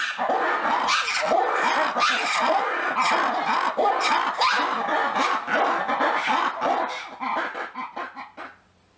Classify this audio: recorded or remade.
recorded